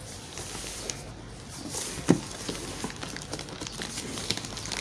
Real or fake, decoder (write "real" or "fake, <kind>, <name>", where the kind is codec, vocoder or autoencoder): real